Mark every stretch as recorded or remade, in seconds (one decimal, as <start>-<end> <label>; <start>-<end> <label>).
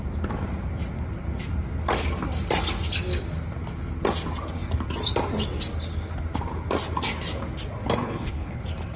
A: 0.0-8.0 recorded; 8.0-8.6 remade; 8.6-9.0 recorded